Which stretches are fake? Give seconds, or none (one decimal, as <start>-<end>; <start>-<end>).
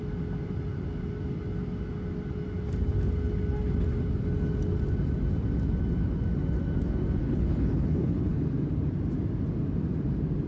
7.2-8.4